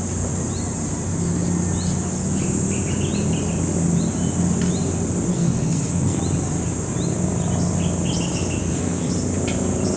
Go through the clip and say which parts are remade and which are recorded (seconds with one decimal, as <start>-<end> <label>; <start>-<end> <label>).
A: 0.0-5.3 recorded; 5.3-6.2 remade; 6.2-8.6 recorded; 8.6-9.1 remade; 9.1-10.0 recorded